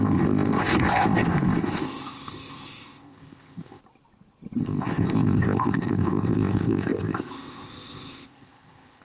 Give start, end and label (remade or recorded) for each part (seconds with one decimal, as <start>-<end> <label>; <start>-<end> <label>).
0.0-3.8 remade; 3.8-4.6 recorded; 4.6-9.0 remade